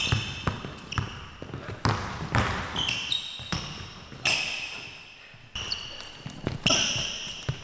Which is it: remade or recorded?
recorded